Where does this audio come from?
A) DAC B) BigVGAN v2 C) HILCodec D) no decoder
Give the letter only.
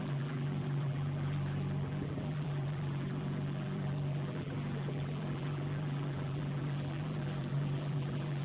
B